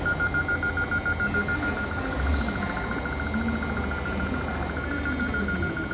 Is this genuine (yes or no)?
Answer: yes